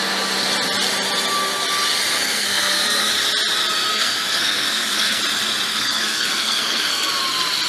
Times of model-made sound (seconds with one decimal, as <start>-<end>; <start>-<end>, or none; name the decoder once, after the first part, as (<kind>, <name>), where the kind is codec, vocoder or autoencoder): 2.1-3.1 (codec, SNAC); 3.9-5.2; 5.7-7.1